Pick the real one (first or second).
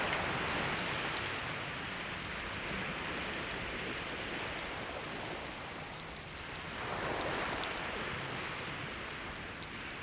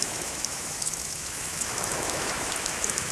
first